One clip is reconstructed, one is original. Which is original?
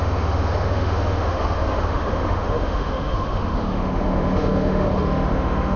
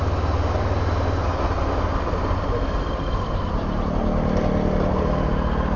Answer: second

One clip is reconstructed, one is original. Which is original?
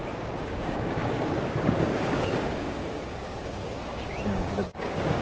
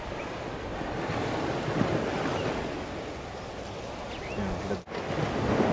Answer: second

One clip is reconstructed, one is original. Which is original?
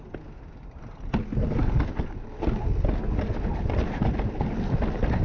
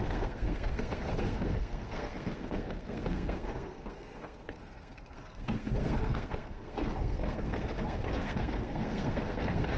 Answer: first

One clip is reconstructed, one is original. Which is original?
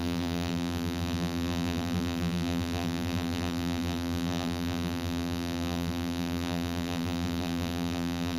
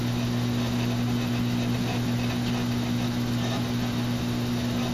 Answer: second